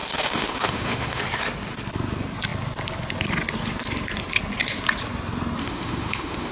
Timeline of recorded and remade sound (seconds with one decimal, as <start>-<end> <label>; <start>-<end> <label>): 0.0-1.2 remade; 1.2-5.6 recorded; 5.6-6.5 remade